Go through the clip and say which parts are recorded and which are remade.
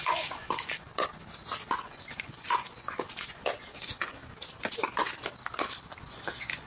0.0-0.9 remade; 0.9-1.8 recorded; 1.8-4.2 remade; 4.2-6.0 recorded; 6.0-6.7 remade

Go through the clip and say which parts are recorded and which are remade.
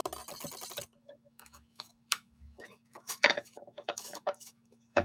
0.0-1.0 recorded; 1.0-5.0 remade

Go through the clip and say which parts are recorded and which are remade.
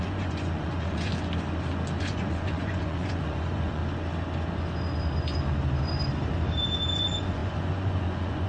0.0-1.1 remade; 1.1-2.0 recorded; 2.0-3.8 remade; 3.8-6.9 recorded; 6.9-8.5 remade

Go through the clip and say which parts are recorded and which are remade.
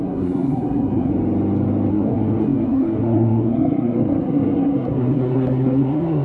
0.0-1.1 remade; 1.1-1.9 recorded; 1.9-6.2 remade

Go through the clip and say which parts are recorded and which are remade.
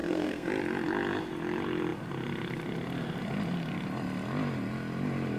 0.0-0.5 remade; 0.5-5.4 recorded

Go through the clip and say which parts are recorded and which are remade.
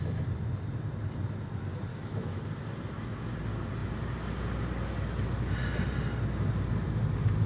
0.0-1.9 recorded; 1.9-2.4 remade; 2.4-7.5 recorded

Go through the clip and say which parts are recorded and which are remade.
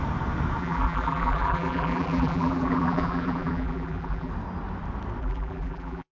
0.0-0.6 recorded; 0.6-4.3 remade; 4.3-5.2 recorded; 5.2-6.1 remade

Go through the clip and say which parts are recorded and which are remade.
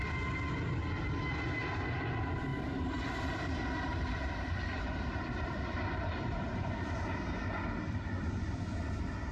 0.0-2.5 recorded; 2.5-6.9 remade; 6.9-9.3 recorded